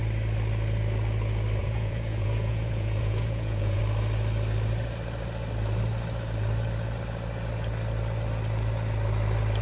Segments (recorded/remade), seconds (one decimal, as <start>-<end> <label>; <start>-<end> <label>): 0.0-1.6 recorded; 1.6-3.8 remade; 3.8-9.6 recorded